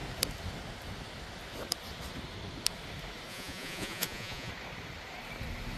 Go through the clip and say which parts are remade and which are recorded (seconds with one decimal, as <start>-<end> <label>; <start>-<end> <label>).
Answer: 0.0-3.3 recorded; 3.3-4.5 remade; 4.5-5.8 recorded